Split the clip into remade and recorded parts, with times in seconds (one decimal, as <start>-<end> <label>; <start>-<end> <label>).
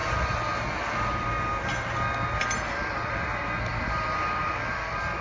0.0-5.2 recorded